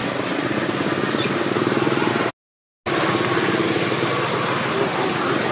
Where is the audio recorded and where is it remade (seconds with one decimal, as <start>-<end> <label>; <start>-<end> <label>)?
0.0-2.1 remade; 2.1-5.5 recorded

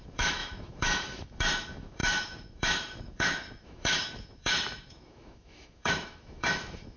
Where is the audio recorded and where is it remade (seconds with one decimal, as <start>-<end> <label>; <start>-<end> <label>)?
0.0-7.0 remade

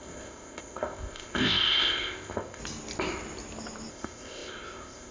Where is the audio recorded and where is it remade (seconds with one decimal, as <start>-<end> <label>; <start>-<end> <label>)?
0.0-2.6 remade; 2.6-3.9 recorded; 3.9-5.1 remade

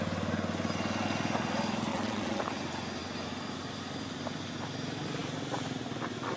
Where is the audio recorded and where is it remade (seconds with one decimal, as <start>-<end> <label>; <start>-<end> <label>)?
0.0-1.9 recorded; 1.9-2.4 remade; 2.4-6.4 recorded

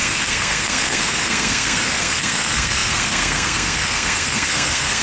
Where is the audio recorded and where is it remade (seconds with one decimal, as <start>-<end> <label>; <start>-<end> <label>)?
0.0-5.0 remade